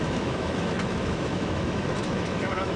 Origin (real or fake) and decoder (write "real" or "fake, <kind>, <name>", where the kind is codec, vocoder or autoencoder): fake, autoencoder, DAC-VAE